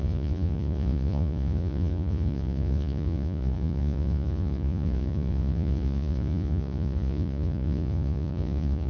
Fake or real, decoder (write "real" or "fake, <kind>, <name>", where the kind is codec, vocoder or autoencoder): fake, vocoder, Vocos